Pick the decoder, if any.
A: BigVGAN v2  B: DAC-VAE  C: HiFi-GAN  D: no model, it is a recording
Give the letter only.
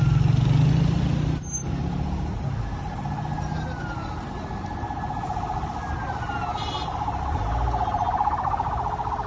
D